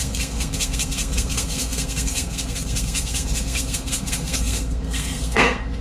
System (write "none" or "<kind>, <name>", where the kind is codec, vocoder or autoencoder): codec, SNAC